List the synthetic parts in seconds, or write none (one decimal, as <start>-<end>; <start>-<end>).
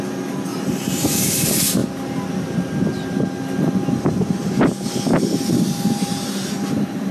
0.5-1.3